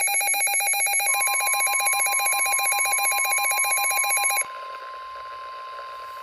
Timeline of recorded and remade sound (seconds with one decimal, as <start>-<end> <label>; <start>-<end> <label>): 0.0-1.1 recorded; 1.1-4.8 remade; 4.8-6.2 recorded